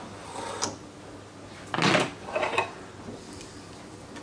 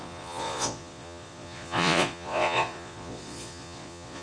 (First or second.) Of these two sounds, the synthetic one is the second